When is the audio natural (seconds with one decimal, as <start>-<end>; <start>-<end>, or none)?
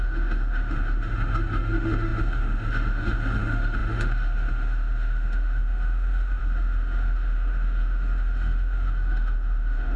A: none